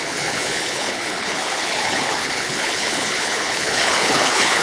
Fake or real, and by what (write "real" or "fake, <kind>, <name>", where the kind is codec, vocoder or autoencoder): fake, codec, HILCodec